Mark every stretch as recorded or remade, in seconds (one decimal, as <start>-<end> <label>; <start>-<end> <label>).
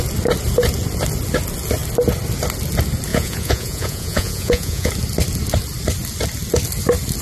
0.0-3.1 recorded; 3.1-4.9 remade; 4.9-7.2 recorded